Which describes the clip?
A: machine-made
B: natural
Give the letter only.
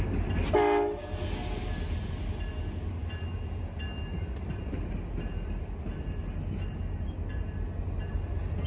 B